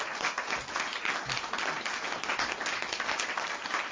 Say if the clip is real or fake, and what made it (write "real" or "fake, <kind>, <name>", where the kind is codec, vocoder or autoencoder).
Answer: real